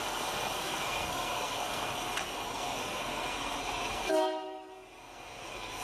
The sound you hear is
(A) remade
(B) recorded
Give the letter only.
A